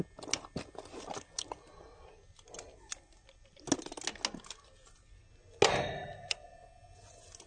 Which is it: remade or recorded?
recorded